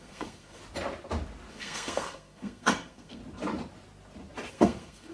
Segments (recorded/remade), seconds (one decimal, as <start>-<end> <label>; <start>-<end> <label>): 0.0-0.6 remade; 0.6-1.5 recorded; 1.5-3.2 remade; 3.2-4.5 recorded; 4.5-5.1 remade